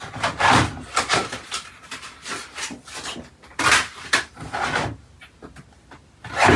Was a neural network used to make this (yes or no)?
no